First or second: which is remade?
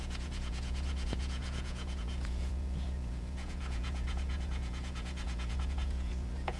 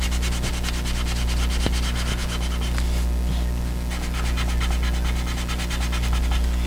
first